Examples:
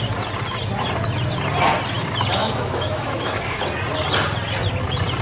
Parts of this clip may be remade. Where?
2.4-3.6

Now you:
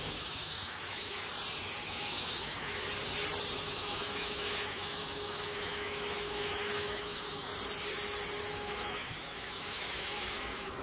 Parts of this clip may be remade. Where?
0.0-1.3; 1.8-2.8; 3.6-7.5; 8.5-10.8

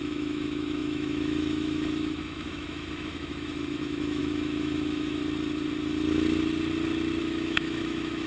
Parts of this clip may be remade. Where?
0.0-5.2; 7.2-8.3

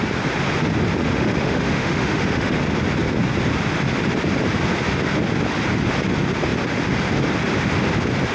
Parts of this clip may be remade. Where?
1.0-2.6

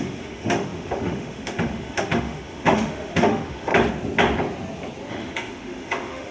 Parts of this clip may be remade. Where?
0.0-3.7; 5.1-6.3

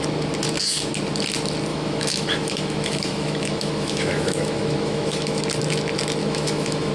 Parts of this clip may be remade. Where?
1.7-5.4; 6.2-6.9

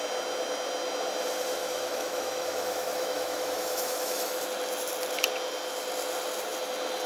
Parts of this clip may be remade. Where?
1.6-4.4

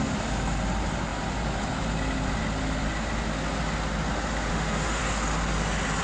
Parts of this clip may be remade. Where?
4.5-5.0